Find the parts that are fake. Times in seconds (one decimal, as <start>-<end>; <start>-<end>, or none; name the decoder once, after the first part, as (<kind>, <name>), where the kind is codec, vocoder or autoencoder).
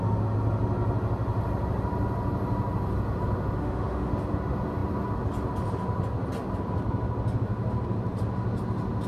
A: 3.6-4.1 (autoencoder, DAC-VAE)